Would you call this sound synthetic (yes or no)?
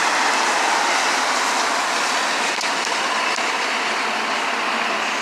no